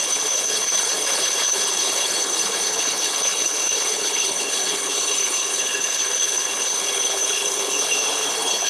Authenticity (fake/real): fake